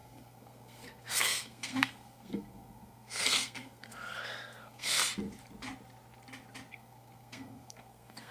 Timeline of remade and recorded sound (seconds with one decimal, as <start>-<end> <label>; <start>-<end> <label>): 0.0-5.0 remade; 5.0-6.7 recorded; 6.7-8.3 remade